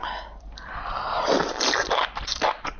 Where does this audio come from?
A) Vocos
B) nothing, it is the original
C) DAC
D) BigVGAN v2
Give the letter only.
D